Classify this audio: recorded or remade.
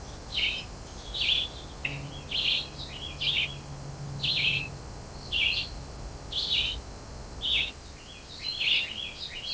recorded